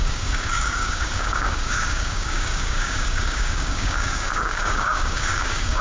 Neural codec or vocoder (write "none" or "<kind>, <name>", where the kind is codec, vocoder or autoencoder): codec, DAC